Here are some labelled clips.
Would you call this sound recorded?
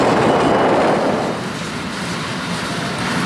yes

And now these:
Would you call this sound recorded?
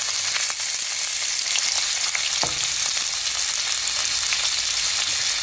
yes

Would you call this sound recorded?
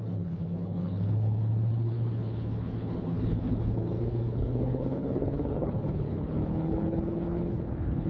no